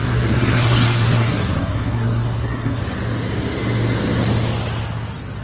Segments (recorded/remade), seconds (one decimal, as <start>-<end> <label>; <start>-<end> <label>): 0.0-2.8 remade; 2.8-5.4 recorded